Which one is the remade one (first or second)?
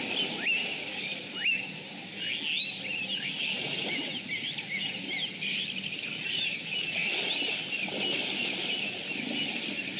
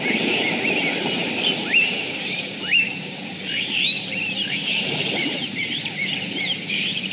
second